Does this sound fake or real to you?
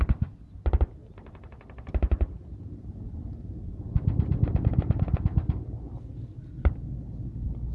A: real